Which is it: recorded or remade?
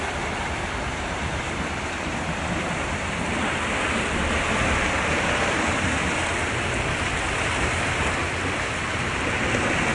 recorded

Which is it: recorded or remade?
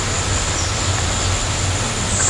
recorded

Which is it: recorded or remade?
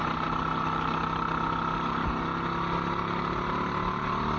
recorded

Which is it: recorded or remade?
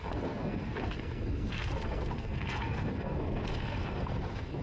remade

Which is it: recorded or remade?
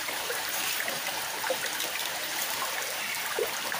remade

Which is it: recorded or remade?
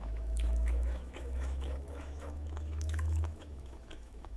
remade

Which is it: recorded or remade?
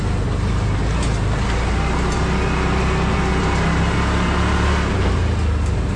recorded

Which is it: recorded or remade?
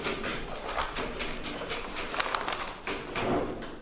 recorded